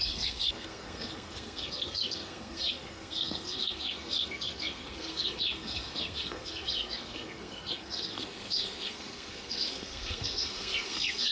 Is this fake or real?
fake